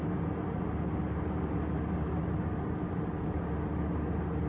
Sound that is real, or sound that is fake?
real